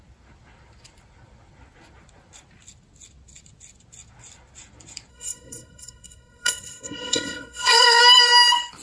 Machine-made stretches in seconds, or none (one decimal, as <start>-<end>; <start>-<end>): 5.1-8.0